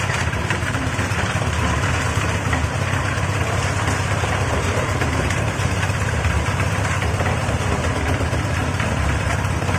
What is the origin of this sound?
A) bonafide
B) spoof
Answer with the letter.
B